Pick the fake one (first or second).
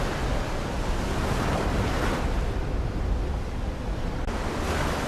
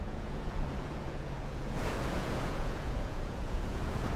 second